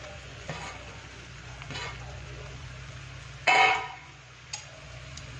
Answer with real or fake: fake